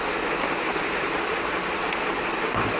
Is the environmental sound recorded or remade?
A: recorded